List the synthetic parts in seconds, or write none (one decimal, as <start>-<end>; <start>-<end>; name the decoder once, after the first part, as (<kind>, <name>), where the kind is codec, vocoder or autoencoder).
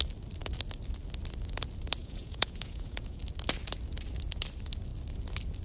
2.0-3.2 (vocoder, Vocos)